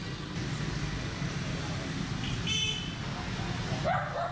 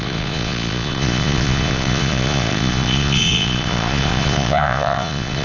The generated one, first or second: second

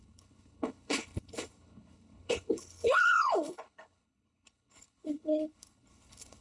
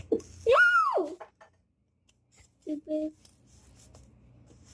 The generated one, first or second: first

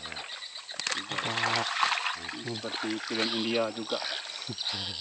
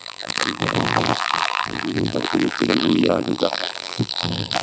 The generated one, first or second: second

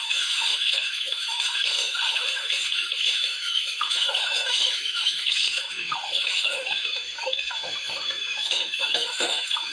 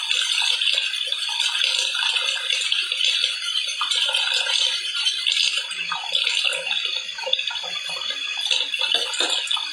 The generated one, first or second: first